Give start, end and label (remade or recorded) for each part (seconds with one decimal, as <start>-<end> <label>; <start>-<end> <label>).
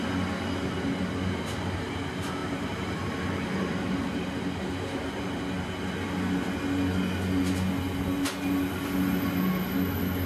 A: 0.0-2.4 recorded; 2.4-5.4 remade; 5.4-10.3 recorded